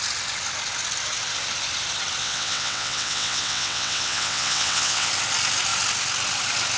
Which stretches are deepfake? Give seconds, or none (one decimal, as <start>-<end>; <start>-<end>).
2.2-5.1